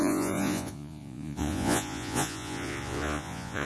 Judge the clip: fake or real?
fake